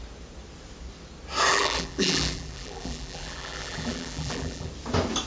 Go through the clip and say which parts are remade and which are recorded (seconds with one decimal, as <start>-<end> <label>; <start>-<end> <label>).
0.0-1.5 recorded; 1.5-4.7 remade; 4.7-5.3 recorded